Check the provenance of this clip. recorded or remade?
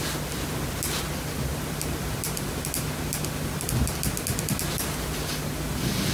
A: recorded